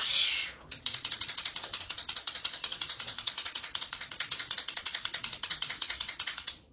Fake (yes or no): yes